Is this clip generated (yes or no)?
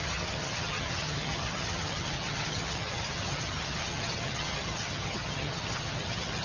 yes